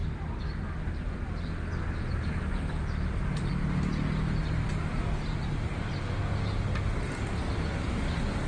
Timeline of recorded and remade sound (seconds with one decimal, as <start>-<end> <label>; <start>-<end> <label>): 0.0-8.5 recorded